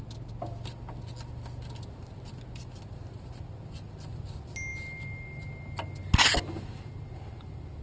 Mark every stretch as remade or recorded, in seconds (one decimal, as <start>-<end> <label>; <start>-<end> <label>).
0.0-7.8 recorded

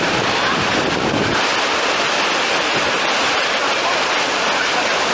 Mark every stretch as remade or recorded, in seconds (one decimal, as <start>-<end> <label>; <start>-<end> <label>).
0.0-5.1 recorded

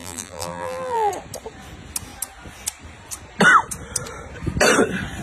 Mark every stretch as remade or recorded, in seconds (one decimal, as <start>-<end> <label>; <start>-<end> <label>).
0.0-1.1 remade; 1.1-5.2 recorded

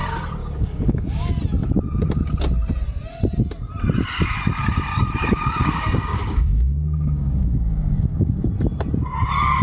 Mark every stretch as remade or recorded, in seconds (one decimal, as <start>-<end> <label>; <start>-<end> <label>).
0.0-0.4 recorded; 0.4-1.3 remade; 1.3-5.2 recorded; 5.2-8.5 remade; 8.5-9.6 recorded

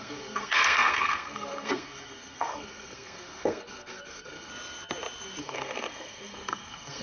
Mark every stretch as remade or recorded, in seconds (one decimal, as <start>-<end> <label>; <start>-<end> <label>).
0.0-4.5 remade; 4.5-5.4 recorded; 5.4-7.0 remade